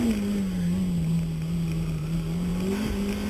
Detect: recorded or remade recorded